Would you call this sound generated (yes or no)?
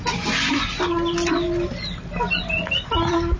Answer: no